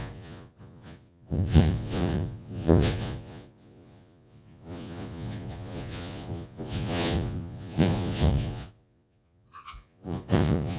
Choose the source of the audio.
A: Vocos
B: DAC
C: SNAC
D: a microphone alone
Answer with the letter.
A